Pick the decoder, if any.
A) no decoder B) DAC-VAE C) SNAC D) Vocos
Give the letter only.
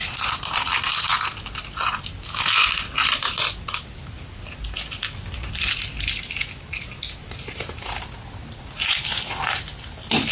A